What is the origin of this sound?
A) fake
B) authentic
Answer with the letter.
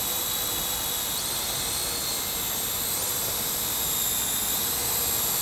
B